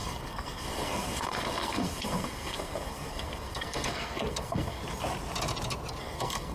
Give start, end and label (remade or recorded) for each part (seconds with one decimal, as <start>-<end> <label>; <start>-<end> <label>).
0.0-4.8 remade; 4.8-6.0 recorded; 6.0-6.5 remade